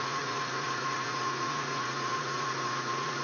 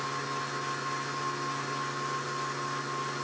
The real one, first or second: second